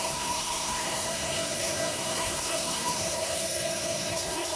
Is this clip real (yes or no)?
no